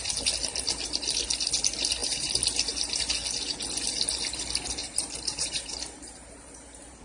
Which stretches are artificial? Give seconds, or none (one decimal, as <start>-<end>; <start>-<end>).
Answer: 2.0-2.9; 4.8-7.0